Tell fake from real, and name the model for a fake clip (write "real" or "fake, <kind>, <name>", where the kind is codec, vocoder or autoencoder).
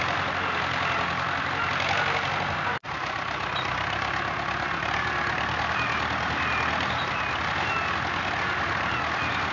real